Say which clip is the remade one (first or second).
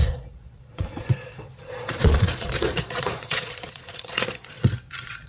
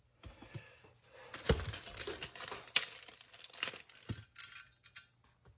first